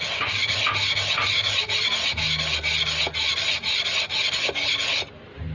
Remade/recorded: recorded